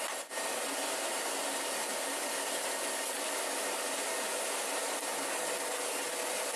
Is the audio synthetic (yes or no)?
no